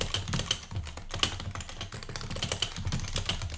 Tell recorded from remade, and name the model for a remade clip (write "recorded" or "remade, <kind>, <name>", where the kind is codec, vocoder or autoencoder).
recorded